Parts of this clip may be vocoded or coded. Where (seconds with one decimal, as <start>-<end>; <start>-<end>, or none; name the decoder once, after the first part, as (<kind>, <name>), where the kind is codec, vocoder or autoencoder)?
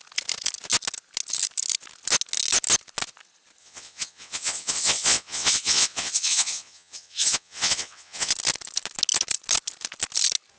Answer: 3.6-8.3 (vocoder, WaveNeXt)